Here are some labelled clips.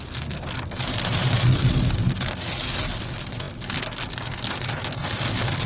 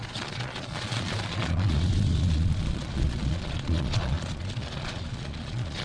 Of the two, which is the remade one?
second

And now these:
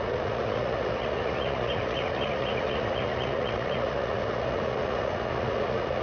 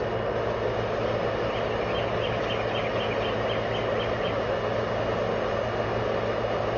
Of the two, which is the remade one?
first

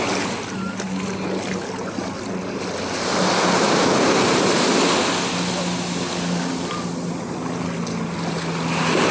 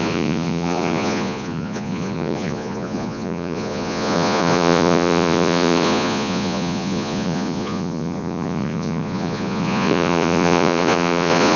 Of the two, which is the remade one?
second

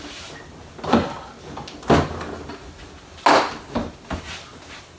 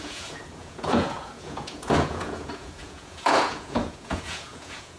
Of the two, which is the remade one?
second